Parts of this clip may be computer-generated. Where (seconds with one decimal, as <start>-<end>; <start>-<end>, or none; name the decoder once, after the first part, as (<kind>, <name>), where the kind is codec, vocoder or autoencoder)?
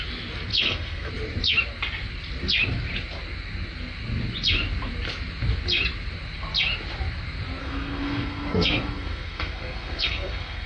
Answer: 0.5-1.1 (codec, SNAC); 7.6-10.7